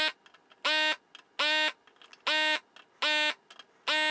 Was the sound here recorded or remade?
recorded